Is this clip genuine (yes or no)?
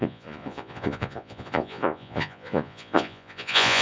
no